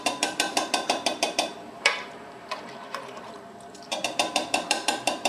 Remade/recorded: remade